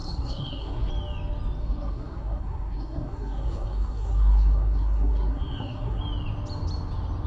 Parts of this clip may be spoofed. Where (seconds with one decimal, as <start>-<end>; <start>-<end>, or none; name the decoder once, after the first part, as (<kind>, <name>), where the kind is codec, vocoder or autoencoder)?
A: 0.0-0.9 (codec, SNAC); 1.6-6.0